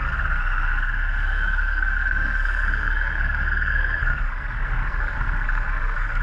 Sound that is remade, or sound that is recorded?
remade